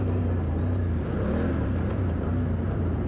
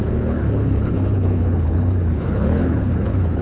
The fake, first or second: second